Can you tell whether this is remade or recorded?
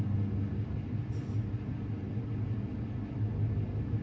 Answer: recorded